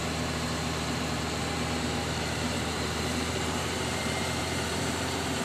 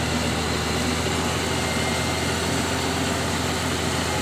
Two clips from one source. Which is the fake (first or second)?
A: first